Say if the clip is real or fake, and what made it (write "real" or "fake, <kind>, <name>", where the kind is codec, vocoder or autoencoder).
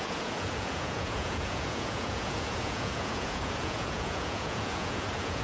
fake, vocoder, Vocos